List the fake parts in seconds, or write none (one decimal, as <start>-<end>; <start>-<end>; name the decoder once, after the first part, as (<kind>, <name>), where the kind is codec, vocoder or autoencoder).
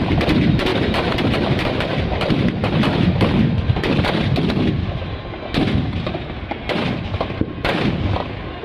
none